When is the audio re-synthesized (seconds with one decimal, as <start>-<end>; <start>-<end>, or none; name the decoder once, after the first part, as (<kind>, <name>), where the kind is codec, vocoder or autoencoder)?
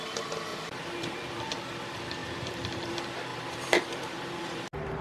0.5-1.1 (vocoder, BigVGAN v2); 2.2-2.9; 3.3-4.6